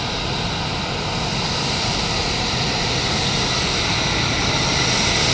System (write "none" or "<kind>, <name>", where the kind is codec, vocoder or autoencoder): none